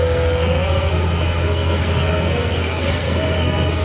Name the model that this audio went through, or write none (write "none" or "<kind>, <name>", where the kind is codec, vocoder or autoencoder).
codec, SNAC